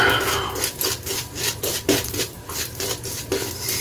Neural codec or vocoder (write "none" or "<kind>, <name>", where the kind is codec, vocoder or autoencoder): none